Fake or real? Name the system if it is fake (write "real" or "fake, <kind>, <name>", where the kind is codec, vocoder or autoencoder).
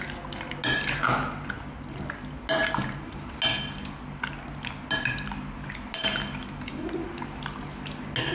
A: real